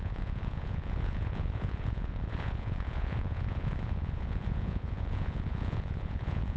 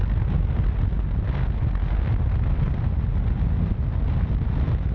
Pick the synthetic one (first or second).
first